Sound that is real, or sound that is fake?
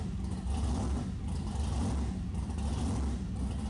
real